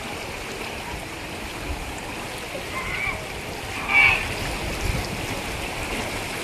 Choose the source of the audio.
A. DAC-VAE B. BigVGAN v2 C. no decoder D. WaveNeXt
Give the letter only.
C